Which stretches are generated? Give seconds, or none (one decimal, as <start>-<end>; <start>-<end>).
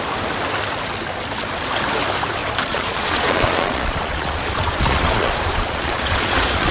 2.7-6.7